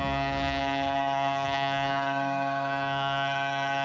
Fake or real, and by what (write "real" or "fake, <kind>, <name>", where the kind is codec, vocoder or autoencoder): fake, codec, SNAC